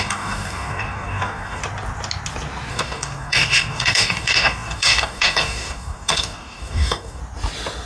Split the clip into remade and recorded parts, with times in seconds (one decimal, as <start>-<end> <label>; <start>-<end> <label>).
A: 0.0-1.6 remade; 1.6-2.7 recorded; 2.7-7.2 remade; 7.2-7.9 recorded